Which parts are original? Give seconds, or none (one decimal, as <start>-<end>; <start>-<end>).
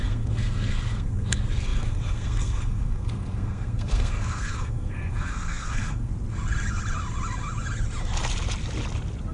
6.1-9.3